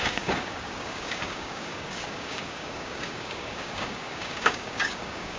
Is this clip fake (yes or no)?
yes